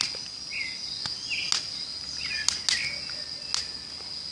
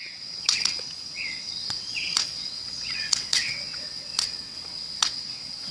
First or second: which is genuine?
first